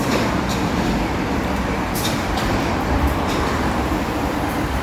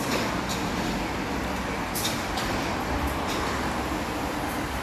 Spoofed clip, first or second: first